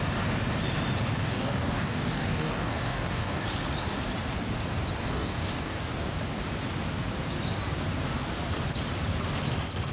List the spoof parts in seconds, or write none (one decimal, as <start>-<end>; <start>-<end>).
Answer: 1.2-3.4; 5.0-5.8